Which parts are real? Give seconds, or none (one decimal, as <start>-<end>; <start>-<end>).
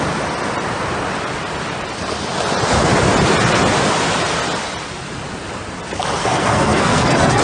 0.0-6.2